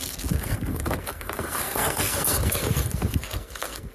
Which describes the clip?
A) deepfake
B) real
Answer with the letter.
A